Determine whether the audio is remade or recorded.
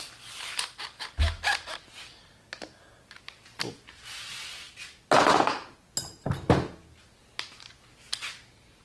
recorded